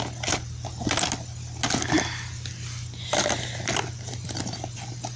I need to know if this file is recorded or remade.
recorded